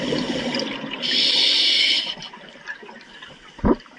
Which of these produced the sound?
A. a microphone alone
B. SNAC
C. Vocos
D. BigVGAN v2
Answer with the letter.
A